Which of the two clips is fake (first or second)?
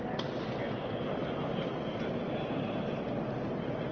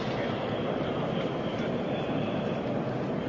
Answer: second